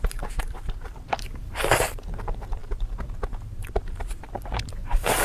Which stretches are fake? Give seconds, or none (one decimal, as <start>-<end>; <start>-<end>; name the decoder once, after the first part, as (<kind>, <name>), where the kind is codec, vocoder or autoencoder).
0.0-5.2 (vocoder, BigVGAN v2)